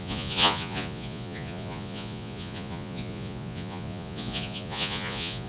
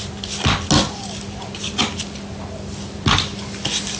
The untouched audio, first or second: second